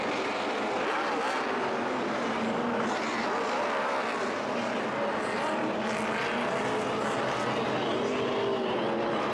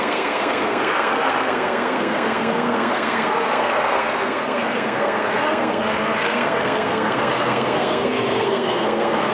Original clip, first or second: first